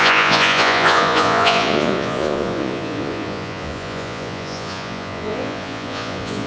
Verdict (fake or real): fake